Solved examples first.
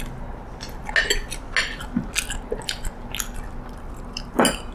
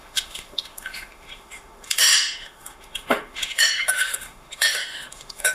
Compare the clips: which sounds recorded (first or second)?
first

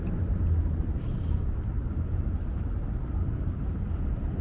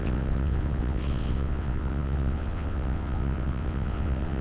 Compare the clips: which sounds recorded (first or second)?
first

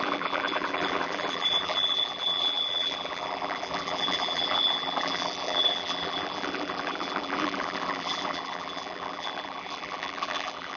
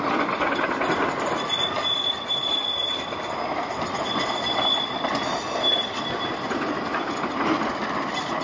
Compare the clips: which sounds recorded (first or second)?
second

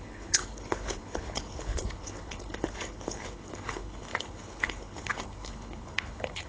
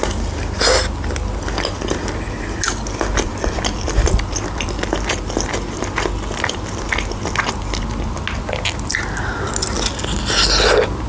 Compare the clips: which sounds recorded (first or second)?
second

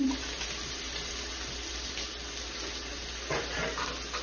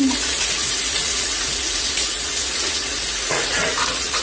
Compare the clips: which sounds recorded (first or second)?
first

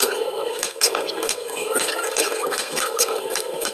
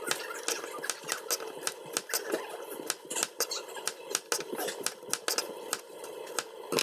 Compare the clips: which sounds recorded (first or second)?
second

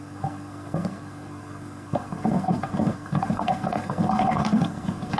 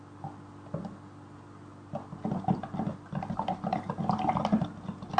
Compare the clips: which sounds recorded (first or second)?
second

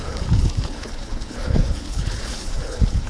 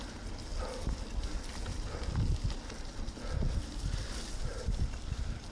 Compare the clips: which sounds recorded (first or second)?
second